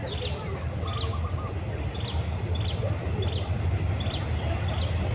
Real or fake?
real